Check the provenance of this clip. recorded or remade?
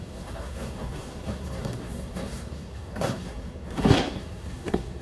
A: remade